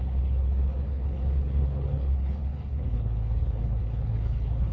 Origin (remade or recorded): remade